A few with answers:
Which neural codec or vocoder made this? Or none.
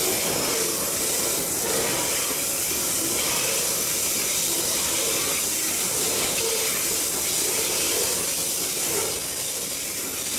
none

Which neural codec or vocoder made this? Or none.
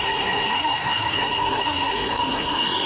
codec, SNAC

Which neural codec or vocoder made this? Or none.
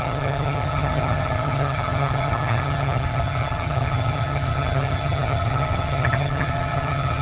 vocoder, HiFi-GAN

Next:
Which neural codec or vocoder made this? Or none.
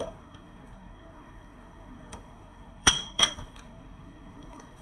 codec, SNAC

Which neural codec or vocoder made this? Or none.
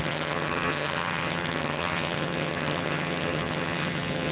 vocoder, HiFi-GAN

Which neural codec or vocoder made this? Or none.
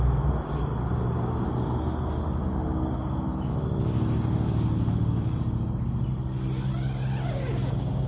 none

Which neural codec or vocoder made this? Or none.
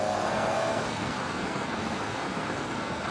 codec, SNAC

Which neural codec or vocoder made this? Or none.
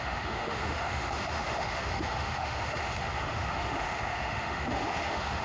autoencoder, DAC-VAE